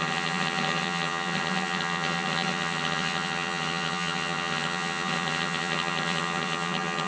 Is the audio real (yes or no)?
no